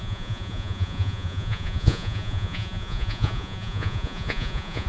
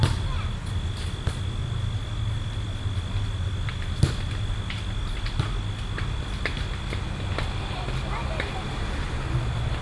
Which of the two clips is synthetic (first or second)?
first